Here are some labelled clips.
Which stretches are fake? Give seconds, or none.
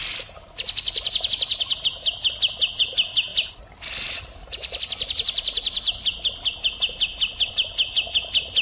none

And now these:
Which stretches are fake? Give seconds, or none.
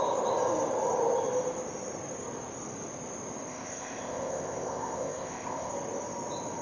3.5-5.7 (codec, ZipCodec)